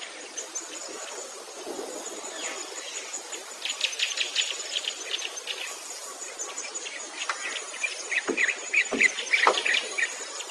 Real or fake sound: real